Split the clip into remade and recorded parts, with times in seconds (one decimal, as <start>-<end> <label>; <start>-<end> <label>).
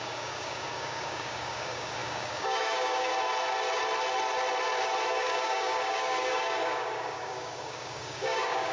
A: 0.0-3.1 remade; 3.1-5.1 recorded; 5.1-8.7 remade